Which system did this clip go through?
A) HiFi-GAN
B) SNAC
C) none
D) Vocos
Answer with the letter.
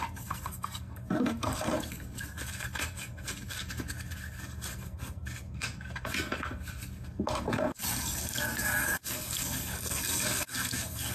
B